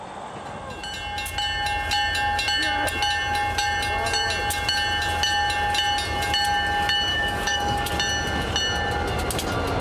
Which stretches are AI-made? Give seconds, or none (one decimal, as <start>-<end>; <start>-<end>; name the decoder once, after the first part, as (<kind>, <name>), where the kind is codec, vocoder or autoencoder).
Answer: 7.1-7.9 (codec, DAC)